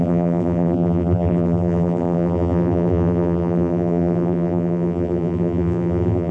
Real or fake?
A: fake